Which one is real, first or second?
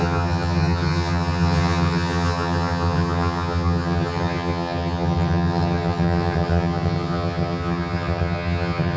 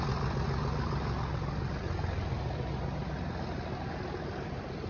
second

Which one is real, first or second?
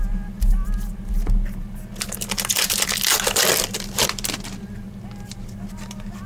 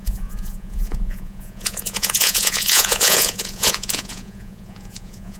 first